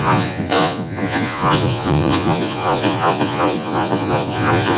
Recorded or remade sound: remade